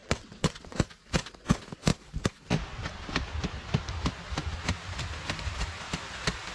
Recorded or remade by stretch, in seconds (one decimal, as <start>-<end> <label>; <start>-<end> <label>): 0.0-0.8 remade; 0.8-6.5 recorded